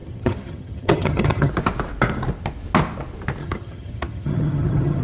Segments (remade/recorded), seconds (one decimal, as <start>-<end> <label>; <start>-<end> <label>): 0.0-1.5 remade; 1.5-3.4 recorded; 3.4-5.0 remade